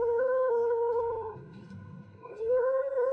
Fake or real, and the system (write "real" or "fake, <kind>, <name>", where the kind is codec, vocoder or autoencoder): fake, codec, SNAC